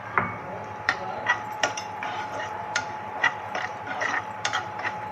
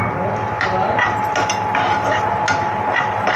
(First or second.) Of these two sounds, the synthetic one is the first